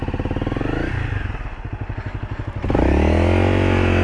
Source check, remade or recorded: recorded